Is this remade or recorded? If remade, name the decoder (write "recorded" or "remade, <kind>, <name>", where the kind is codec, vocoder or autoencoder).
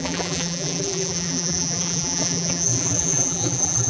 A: remade, vocoder, BigVGAN v2